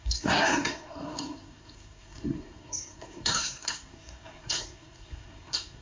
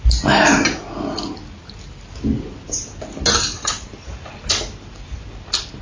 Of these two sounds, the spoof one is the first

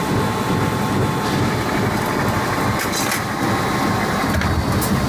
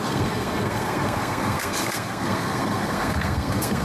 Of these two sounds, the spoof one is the second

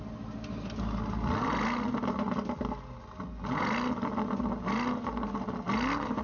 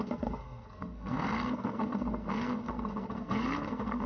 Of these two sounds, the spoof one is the second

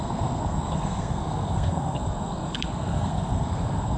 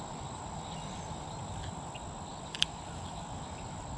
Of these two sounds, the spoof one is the first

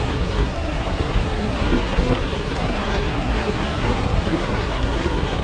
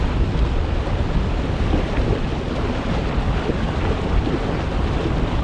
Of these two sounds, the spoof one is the first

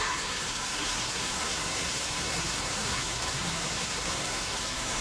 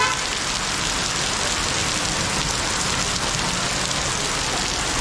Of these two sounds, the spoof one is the first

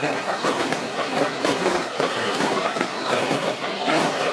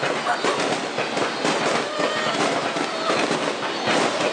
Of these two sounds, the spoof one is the first